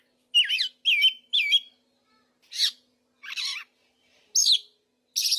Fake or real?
real